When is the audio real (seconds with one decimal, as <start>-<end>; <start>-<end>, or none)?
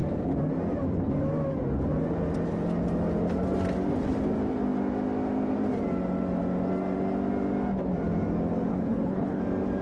0.0-8.7; 9.4-9.8